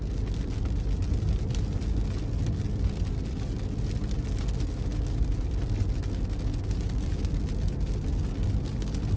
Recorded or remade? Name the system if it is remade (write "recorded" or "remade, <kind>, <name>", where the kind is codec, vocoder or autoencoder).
recorded